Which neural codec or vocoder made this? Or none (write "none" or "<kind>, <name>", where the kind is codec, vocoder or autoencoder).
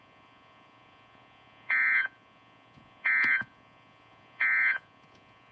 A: vocoder, Vocos